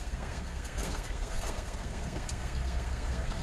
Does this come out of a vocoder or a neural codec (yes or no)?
yes